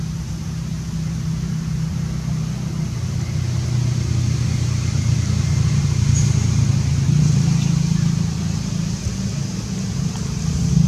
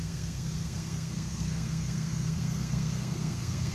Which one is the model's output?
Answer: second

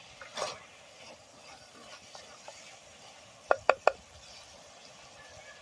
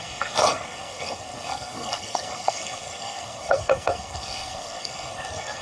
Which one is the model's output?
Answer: second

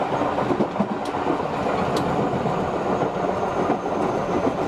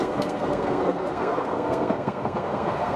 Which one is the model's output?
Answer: second